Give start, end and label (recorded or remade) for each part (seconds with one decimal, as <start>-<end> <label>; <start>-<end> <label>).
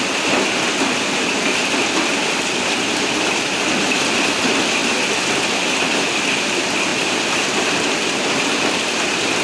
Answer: 0.0-9.4 recorded